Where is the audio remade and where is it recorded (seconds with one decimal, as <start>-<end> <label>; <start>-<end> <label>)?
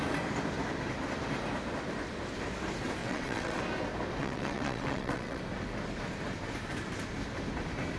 0.0-3.0 recorded; 3.0-3.6 remade; 3.6-4.2 recorded; 4.2-5.4 remade; 5.4-8.0 recorded